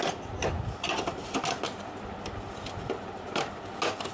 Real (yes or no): yes